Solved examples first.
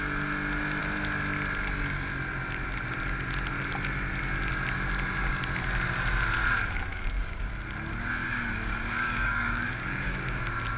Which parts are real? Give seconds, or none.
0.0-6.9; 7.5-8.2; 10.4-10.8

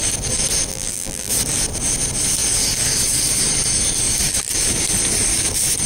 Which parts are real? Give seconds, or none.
0.0-0.7; 1.3-5.9